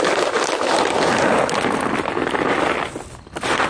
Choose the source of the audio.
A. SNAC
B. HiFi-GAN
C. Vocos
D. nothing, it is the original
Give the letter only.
D